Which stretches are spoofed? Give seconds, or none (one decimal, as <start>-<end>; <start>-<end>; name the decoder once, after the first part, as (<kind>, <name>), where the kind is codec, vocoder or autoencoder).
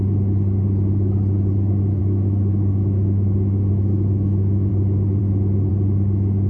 2.0-4.7 (autoencoder, DAC-VAE); 5.2-5.7